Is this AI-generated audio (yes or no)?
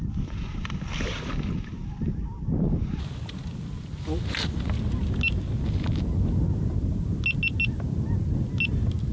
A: no